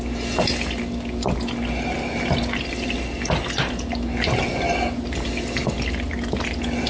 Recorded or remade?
recorded